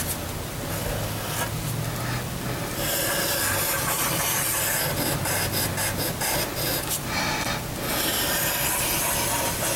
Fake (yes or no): no